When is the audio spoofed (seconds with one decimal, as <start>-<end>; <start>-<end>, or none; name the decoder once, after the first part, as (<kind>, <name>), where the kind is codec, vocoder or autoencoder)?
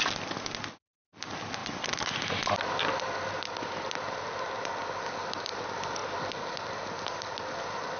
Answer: none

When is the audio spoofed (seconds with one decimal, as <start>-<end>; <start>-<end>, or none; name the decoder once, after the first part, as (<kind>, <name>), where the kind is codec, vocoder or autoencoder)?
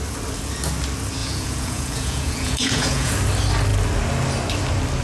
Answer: 1.2-3.1 (vocoder, Vocos)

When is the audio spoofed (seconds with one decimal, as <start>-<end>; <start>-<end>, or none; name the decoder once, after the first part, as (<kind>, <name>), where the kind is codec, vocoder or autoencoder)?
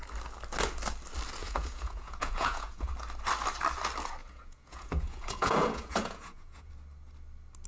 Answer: 1.4-2.9 (vocoder, Vocos); 4.2-6.7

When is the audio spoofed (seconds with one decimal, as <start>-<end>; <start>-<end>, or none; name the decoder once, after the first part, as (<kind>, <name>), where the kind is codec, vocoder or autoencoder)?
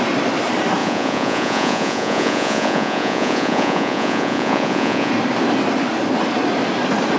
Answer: 0.8-5.1 (vocoder, Vocos)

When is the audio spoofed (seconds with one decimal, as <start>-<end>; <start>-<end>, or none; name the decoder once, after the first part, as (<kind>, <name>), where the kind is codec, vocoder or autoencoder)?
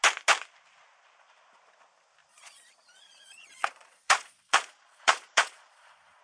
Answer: 2.3-6.2 (vocoder, Vocos)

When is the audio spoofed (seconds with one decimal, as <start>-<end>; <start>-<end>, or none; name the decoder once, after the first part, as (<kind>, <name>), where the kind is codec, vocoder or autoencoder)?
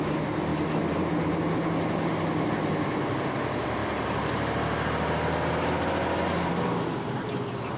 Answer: none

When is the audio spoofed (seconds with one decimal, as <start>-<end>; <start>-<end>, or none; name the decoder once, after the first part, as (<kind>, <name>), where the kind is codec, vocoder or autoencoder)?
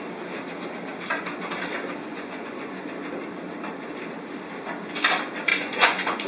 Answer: 2.1-2.8 (vocoder, Vocos); 5.5-6.3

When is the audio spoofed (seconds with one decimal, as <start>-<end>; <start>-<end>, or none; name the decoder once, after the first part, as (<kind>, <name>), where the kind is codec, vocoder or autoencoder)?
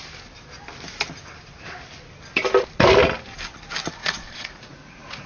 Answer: 4.0-5.3 (vocoder, Vocos)